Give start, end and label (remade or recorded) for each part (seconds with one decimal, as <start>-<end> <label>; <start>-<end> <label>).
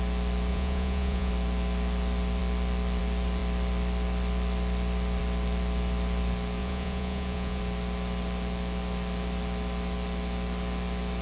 0.0-0.5 recorded; 0.5-1.3 remade; 1.3-6.6 recorded; 6.6-7.6 remade; 7.6-11.2 recorded